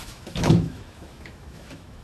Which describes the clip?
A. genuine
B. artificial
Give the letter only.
B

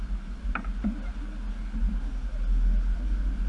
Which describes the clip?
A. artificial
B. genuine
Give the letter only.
B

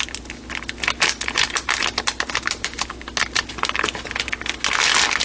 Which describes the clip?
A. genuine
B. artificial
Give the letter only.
A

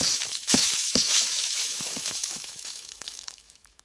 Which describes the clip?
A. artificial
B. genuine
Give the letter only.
A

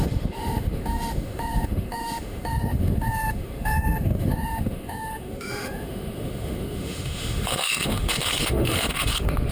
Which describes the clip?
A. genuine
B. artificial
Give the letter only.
B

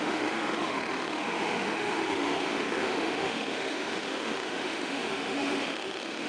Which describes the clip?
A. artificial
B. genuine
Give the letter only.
A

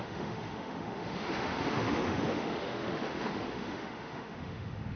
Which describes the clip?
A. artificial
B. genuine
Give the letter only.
A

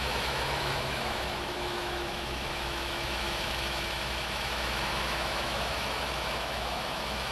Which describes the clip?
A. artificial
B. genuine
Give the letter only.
A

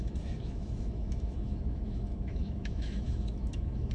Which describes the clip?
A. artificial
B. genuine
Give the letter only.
A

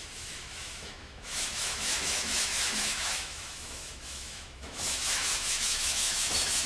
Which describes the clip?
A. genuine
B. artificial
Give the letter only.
B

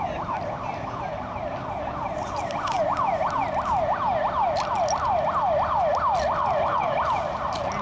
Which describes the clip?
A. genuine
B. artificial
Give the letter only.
A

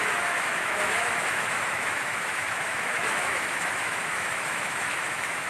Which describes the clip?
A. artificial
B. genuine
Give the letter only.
A